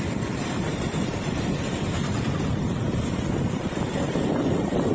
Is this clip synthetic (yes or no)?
yes